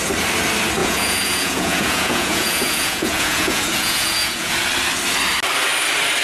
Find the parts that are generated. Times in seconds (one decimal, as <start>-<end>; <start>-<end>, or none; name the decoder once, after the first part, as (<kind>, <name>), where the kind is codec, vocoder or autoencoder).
0.8-4.5 (vocoder, Vocos)